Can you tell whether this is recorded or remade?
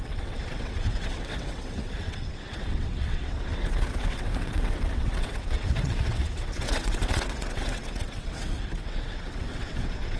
remade